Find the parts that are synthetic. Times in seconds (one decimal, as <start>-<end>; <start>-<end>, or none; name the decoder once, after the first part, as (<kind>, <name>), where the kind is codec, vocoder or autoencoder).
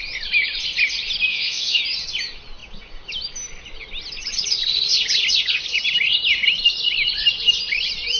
1.3-1.8 (vocoder, WaveNeXt)